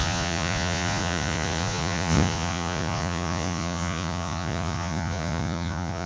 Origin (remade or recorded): remade